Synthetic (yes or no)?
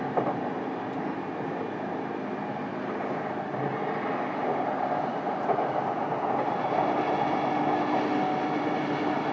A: no